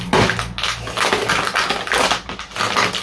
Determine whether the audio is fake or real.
real